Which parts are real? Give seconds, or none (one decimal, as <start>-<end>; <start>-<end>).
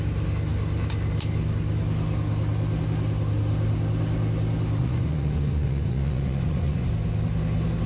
0.0-4.8; 6.9-7.9